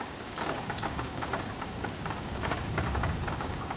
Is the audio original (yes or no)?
no